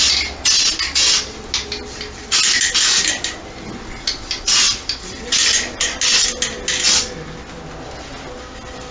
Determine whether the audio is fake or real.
real